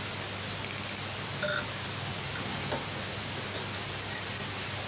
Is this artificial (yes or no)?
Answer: no